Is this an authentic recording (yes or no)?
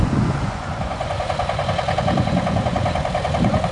no